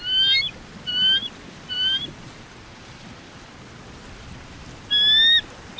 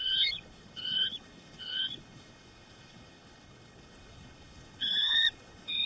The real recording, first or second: first